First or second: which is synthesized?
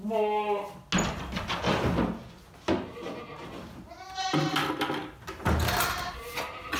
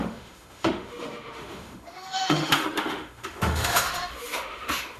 second